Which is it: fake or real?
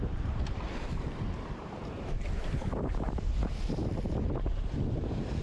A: fake